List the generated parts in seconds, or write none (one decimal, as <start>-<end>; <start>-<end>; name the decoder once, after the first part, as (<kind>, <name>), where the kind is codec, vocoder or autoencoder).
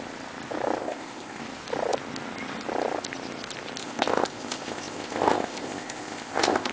0.8-1.4 (codec, ZipCodec); 3.8-6.7